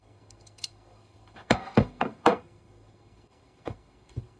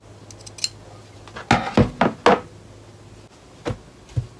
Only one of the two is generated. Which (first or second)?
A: first